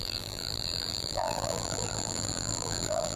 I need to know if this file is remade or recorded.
remade